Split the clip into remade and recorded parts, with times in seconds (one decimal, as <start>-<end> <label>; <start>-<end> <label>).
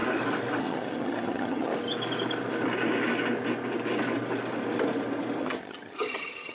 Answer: 0.0-0.6 recorded; 0.6-1.7 remade; 1.7-5.4 recorded; 5.4-6.5 remade